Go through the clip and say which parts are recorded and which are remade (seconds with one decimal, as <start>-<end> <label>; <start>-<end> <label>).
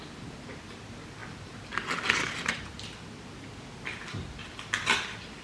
0.0-5.4 recorded